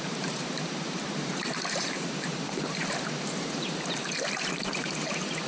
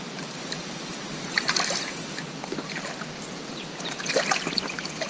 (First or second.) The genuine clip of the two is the second